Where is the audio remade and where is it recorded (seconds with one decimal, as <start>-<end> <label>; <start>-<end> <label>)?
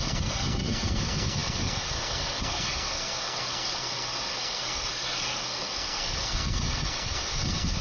0.0-7.8 remade